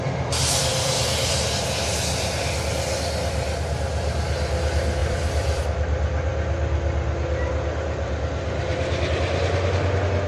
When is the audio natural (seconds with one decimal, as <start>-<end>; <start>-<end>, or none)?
0.0-0.7; 2.5-5.0; 5.6-10.3